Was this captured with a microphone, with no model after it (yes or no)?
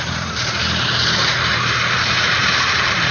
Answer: no